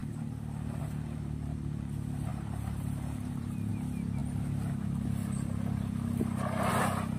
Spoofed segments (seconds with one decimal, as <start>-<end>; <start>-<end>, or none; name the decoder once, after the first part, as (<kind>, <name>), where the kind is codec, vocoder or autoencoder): 0.0-0.8 (vocoder, BigVGAN v2); 2.3-3.7